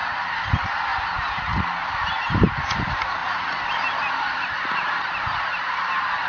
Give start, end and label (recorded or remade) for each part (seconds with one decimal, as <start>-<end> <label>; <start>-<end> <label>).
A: 0.0-3.2 recorded; 3.2-5.1 remade; 5.1-6.3 recorded